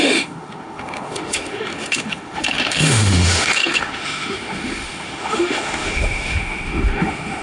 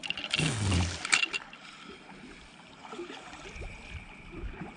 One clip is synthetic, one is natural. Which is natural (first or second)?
second